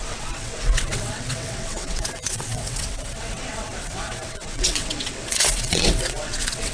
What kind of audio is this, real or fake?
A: fake